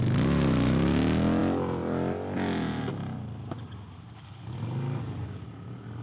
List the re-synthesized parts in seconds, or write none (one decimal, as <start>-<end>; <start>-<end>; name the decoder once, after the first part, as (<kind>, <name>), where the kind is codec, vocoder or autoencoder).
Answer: none